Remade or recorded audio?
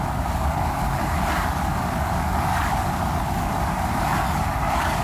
remade